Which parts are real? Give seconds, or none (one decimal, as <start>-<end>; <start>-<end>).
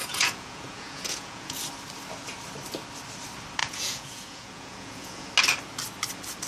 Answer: 1.6-3.6; 5.3-6.5